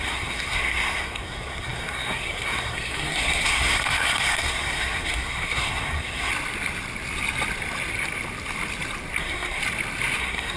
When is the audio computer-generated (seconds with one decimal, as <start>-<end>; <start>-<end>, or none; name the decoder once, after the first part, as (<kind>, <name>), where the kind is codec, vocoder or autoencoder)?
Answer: 0.0-6.3 (codec, SNAC); 9.2-9.6; 10.2-10.6

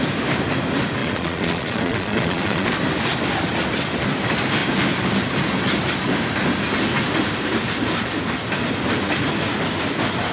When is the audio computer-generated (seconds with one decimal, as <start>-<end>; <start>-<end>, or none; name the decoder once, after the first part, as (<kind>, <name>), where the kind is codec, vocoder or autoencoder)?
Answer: 1.0-2.7 (vocoder, Vocos)

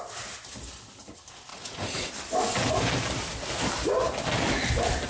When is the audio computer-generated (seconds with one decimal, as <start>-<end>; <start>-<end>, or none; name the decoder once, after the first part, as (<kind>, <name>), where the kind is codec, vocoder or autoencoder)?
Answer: 1.5-2.1 (vocoder, Vocos)

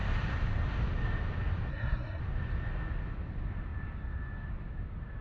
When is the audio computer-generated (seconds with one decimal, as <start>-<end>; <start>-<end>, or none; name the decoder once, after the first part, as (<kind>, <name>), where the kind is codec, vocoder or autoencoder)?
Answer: 1.7-2.2 (codec, SNAC)

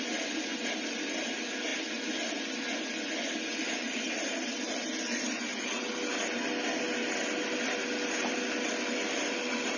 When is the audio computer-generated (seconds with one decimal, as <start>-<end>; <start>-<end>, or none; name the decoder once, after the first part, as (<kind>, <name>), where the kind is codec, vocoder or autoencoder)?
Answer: none

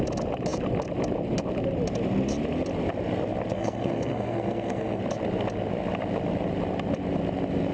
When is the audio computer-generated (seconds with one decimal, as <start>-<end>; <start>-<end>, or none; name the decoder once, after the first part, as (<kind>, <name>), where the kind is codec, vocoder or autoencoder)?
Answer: 3.5-5.0 (codec, SNAC)

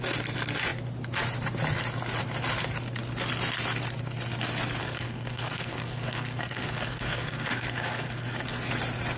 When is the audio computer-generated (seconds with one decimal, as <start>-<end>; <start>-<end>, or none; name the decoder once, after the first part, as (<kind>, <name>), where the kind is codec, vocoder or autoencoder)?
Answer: 4.8-8.7 (codec, SNAC)

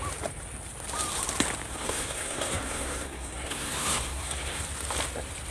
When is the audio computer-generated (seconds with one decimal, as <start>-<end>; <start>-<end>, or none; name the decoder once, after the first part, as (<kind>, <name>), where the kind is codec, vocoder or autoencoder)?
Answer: 1.7-4.6 (codec, SNAC)